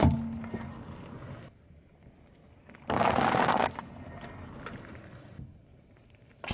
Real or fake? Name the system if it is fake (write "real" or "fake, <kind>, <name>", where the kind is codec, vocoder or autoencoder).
real